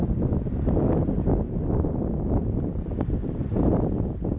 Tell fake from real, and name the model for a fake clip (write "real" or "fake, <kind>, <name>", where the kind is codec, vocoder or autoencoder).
real